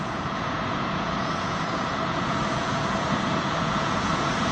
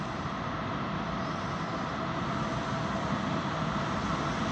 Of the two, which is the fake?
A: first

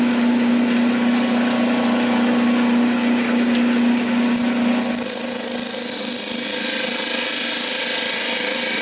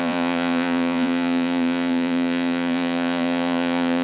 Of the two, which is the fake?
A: second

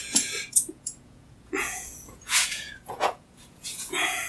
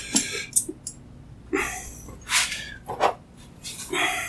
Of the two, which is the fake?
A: first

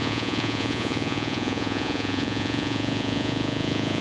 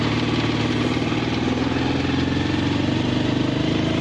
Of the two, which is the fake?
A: first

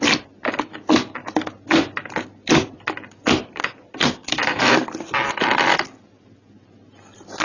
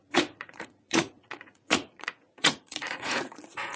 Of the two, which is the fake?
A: second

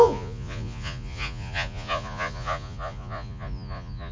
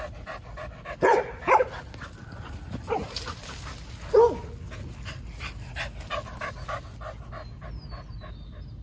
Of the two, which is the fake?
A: first